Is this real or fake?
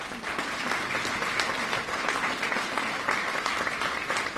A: real